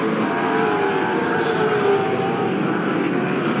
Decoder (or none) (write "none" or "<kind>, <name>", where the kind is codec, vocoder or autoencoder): none